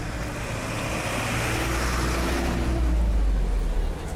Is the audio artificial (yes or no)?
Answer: no